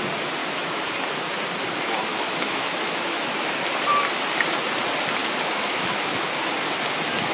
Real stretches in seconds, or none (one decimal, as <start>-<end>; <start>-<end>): 0.0-0.4; 0.9-2.1; 3.6-5.2; 6.5-7.3